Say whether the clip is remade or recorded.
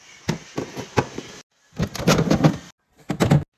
recorded